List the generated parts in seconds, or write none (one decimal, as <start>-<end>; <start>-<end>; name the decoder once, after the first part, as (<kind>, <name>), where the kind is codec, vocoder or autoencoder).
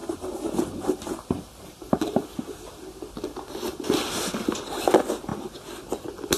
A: 0.0-3.1 (vocoder, BigVGAN v2)